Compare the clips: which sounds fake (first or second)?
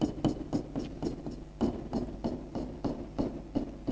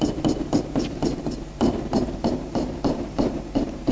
second